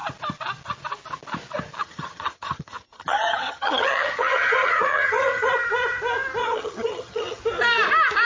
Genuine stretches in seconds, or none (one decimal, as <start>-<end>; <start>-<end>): 0.0-1.8; 5.5-6.4; 7.4-8.3